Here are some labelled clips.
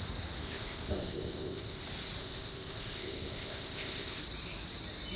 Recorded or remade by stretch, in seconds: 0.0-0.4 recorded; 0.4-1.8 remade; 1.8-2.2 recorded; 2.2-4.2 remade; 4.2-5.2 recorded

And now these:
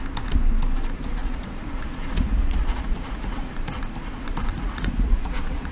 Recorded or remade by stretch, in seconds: 0.0-1.2 recorded; 1.2-3.5 remade; 3.5-4.5 recorded; 4.5-5.7 remade

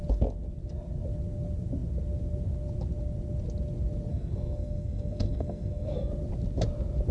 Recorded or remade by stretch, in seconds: 0.0-4.1 recorded; 4.1-6.1 remade; 6.1-7.1 recorded

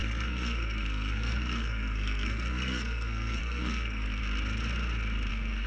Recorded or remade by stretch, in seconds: 0.0-4.2 remade; 4.2-5.3 recorded; 5.3-5.7 remade

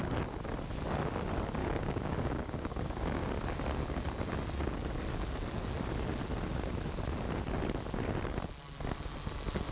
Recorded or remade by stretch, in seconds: 0.0-1.6 recorded; 1.6-3.3 remade; 3.3-9.7 recorded

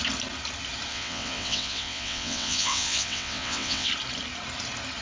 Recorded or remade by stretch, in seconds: 0.0-0.9 recorded; 0.9-3.9 remade; 3.9-5.0 recorded

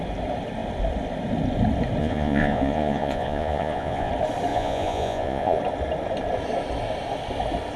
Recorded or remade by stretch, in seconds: 0.0-2.0 recorded; 2.0-4.1 remade; 4.1-4.5 recorded; 4.5-5.6 remade; 5.6-7.8 recorded

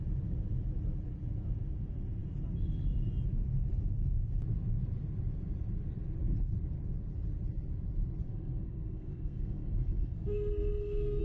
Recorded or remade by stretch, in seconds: 0.0-8.3 recorded; 8.3-11.2 remade